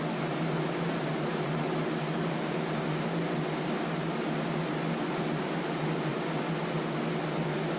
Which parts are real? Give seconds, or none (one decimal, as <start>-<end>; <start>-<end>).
0.0-7.8